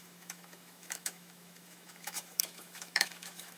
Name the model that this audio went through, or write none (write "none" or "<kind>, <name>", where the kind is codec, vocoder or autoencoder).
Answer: autoencoder, DAC-VAE